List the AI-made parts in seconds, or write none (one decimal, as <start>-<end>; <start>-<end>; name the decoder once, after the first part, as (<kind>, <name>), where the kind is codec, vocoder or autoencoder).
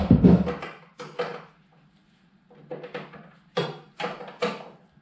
1.3-4.2 (vocoder, BigVGAN v2)